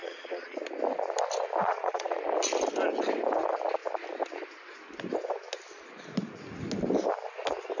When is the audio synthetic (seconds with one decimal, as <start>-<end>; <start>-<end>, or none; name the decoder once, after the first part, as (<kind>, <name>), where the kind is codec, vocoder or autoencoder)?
0.0-0.6 (vocoder, Vocos); 1.6-2.2